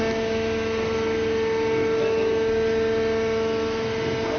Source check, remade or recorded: recorded